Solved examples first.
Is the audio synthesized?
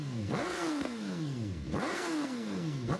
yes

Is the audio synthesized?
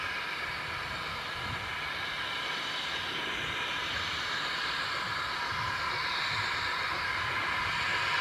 no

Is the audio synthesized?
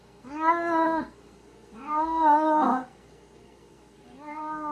yes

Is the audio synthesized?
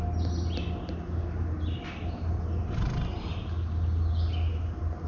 no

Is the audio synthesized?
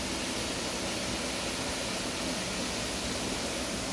no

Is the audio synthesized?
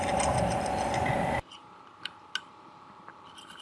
no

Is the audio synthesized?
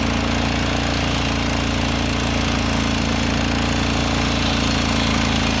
no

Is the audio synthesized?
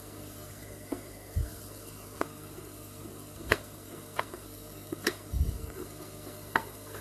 yes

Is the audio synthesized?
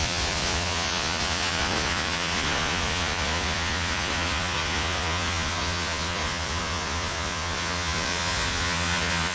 yes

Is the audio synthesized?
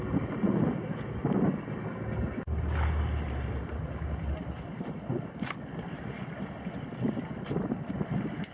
no